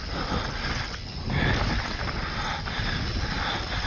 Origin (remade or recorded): recorded